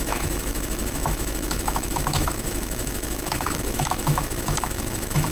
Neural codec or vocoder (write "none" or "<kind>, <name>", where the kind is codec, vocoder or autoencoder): autoencoder, DAC-VAE